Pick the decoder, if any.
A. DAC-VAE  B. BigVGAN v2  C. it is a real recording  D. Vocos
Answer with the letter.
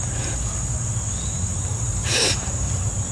B